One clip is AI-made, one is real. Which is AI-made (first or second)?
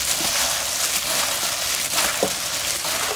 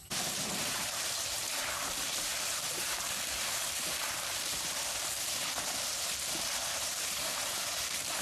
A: second